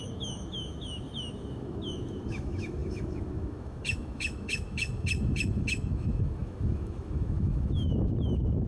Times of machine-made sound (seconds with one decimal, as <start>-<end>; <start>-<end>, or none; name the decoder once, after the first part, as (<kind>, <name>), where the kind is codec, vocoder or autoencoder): 0.0-8.7 (autoencoder, DAC-VAE)